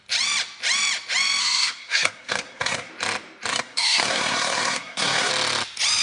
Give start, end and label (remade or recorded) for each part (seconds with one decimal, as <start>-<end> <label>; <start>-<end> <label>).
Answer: 0.0-1.4 recorded; 1.4-2.9 remade; 2.9-3.5 recorded; 3.5-5.3 remade; 5.3-6.0 recorded